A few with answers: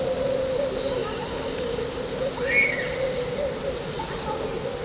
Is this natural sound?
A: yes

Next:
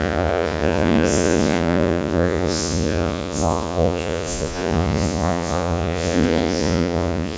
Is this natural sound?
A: no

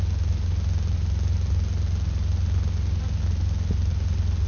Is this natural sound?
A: yes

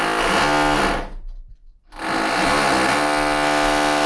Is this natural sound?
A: yes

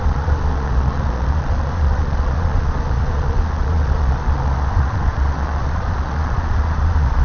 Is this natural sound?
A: no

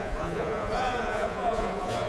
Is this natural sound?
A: no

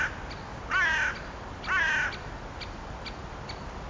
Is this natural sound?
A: yes